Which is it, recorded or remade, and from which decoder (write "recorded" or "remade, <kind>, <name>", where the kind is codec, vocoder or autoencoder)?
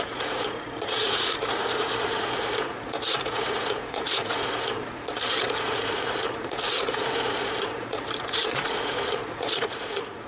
remade, vocoder, Vocos